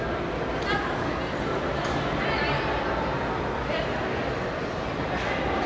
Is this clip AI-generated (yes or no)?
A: no